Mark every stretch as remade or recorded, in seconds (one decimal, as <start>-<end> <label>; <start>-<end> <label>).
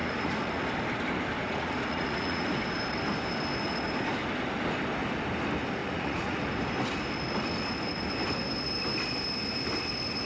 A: 0.0-0.6 remade; 0.6-1.4 recorded; 1.4-2.5 remade; 2.5-5.8 recorded; 5.8-6.5 remade; 6.5-10.2 recorded